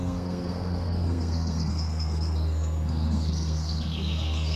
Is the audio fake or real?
fake